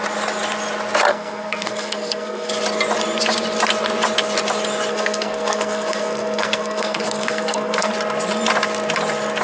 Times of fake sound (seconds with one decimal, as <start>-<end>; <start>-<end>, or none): 1.1-2.5; 4.9-7.9